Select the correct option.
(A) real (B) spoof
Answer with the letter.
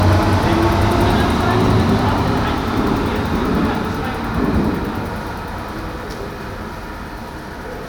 A